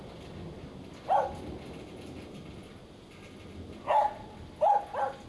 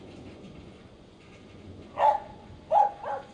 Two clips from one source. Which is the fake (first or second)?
second